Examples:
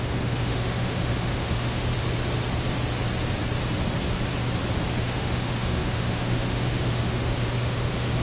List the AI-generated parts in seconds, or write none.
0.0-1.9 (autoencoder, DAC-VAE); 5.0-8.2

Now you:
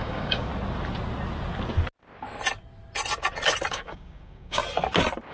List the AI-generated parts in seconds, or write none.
0.0-0.5 (codec, DAC); 3.7-4.6

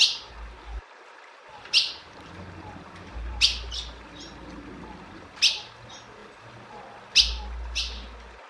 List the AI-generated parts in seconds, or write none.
none

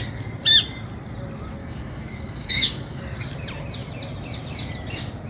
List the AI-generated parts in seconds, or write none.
1.6-3.0 (codec, DAC)

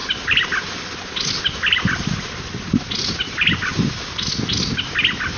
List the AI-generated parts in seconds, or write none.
none

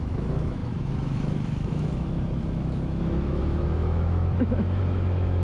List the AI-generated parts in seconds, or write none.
0.0-5.4 (autoencoder, DAC-VAE)

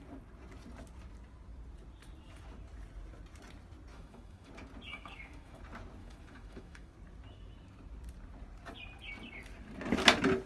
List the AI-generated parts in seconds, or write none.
3.9-4.5 (autoencoder, DAC-VAE); 4.9-5.6; 6.0-6.9

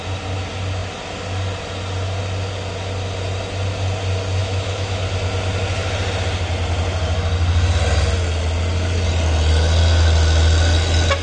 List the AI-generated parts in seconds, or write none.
4.4-5.0 (autoencoder, DAC-VAE)